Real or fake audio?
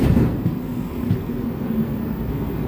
fake